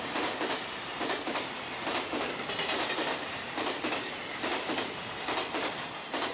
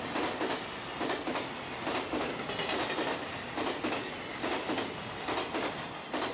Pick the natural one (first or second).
second